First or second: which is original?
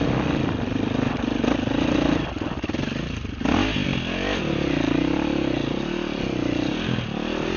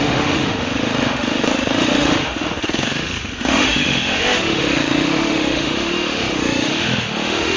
first